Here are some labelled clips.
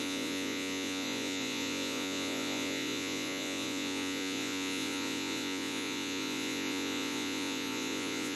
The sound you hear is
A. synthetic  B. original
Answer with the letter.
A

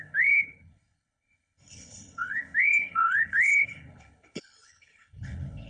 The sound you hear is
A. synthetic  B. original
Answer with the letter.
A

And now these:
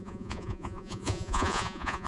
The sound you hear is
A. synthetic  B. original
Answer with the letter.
A